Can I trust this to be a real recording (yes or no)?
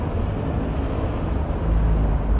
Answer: yes